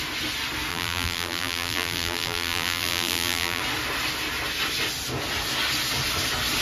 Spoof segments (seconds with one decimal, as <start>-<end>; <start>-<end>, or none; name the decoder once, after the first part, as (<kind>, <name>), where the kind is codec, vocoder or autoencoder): 0.7-3.6 (vocoder, BigVGAN v2)